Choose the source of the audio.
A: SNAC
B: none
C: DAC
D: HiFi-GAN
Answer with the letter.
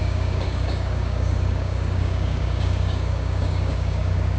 C